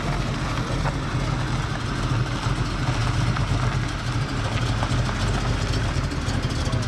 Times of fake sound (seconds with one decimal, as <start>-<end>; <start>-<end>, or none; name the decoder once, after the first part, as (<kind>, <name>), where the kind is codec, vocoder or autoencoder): none